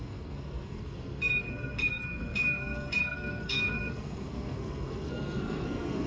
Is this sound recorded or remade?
remade